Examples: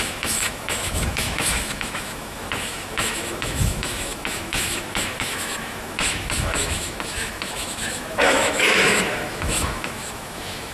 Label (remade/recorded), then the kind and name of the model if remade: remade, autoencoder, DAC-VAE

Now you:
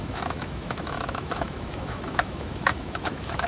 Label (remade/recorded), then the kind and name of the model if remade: remade, autoencoder, DAC-VAE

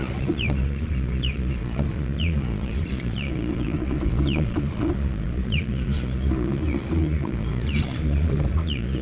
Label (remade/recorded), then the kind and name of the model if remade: remade, vocoder, Vocos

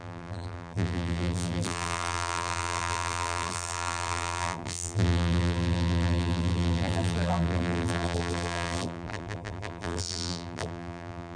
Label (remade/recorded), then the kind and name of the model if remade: remade, vocoder, BigVGAN v2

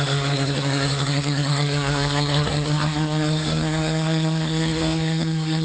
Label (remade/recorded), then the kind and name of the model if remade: remade, codec, SNAC